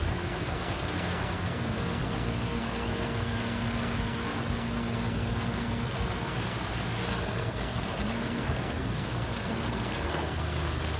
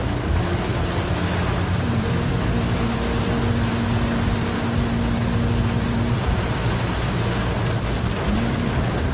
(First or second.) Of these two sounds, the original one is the second